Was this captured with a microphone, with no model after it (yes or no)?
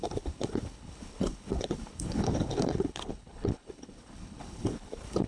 no